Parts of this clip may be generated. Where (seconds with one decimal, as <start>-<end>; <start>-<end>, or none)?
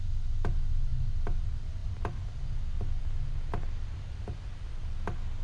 none